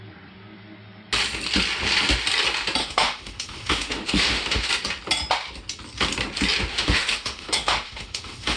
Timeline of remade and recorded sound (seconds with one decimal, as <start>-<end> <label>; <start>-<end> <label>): 0.0-2.8 recorded; 2.8-4.7 remade; 4.7-6.7 recorded; 6.7-8.6 remade